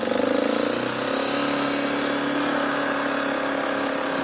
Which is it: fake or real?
real